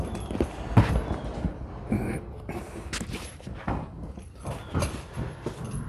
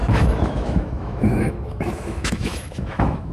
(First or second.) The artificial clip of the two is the second